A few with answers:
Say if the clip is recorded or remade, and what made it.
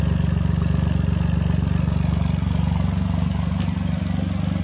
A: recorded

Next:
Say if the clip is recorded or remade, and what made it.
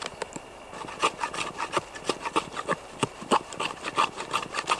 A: recorded